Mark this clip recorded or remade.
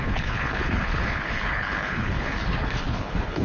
remade